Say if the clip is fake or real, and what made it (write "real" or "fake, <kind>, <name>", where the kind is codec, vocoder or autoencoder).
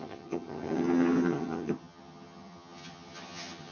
fake, vocoder, HiFi-GAN